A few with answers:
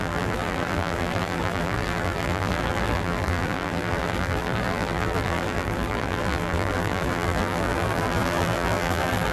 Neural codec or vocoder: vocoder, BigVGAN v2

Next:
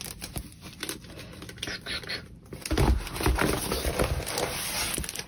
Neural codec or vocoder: vocoder, BigVGAN v2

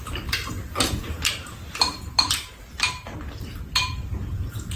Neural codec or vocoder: vocoder, BigVGAN v2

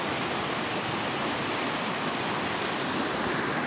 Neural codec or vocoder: vocoder, BigVGAN v2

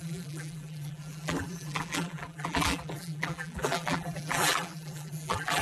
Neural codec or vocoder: vocoder, BigVGAN v2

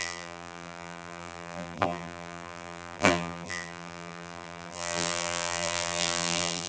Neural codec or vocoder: vocoder, BigVGAN v2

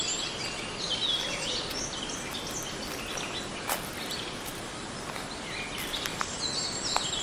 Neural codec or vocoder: none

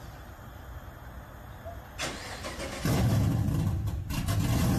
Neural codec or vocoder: none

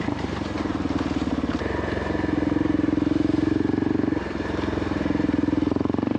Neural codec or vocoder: vocoder, BigVGAN v2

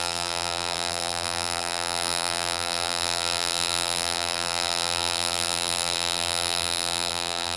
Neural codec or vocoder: vocoder, BigVGAN v2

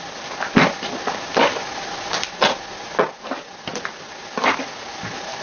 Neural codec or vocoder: none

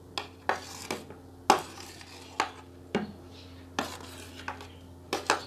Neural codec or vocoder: none